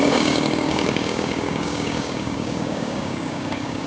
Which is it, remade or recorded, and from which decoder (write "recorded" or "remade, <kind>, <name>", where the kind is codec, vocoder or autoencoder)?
remade, codec, DAC